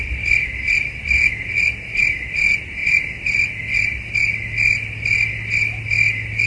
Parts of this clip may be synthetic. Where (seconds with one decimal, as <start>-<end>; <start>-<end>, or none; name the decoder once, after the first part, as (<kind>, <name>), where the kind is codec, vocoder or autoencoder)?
none

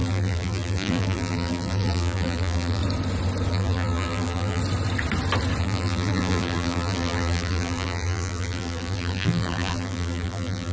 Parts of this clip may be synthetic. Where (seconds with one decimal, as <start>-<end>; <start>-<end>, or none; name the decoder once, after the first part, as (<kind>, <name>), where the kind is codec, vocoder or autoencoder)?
0.0-2.8 (vocoder, BigVGAN v2); 3.5-4.6; 5.6-10.7

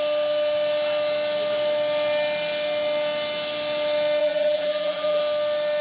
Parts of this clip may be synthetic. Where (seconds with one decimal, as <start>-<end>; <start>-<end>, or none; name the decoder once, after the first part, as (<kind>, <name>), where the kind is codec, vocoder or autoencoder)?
4.2-5.2 (vocoder, BigVGAN v2)

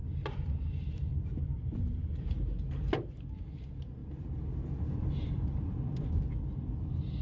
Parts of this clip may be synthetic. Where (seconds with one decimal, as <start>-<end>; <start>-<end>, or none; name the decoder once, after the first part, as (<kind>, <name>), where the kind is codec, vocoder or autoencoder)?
none

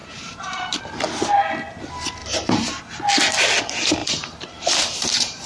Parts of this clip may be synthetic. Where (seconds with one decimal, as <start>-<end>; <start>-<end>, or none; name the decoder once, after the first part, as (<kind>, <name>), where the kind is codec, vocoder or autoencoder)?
0.0-0.8 (vocoder, BigVGAN v2); 2.2-3.0; 4.0-5.5

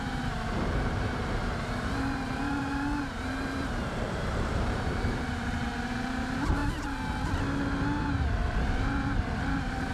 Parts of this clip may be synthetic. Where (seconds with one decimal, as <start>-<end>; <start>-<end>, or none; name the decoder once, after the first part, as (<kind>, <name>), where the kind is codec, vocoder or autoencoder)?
0.0-6.6 (vocoder, BigVGAN v2); 8.0-9.9